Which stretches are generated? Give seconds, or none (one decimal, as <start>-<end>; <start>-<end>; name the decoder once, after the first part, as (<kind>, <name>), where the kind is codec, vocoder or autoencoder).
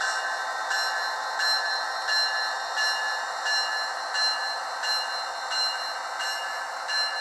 none